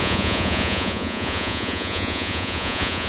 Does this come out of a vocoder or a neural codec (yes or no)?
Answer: yes